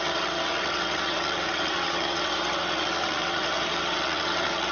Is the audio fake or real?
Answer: fake